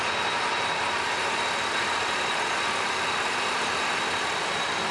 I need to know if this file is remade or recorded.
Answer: recorded